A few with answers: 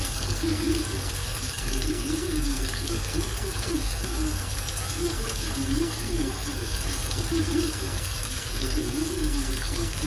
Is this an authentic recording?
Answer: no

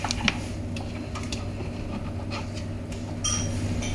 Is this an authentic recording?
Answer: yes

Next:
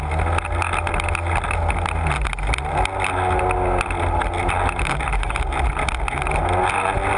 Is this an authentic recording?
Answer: yes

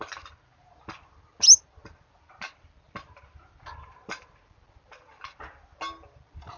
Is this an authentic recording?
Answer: yes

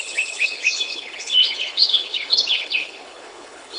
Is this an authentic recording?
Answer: no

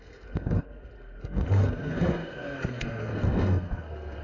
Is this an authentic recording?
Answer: no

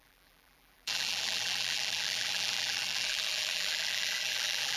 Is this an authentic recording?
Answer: no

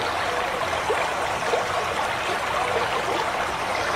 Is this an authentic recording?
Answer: yes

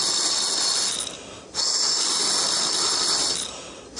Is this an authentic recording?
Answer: yes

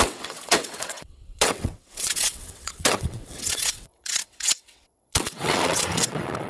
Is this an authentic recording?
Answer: no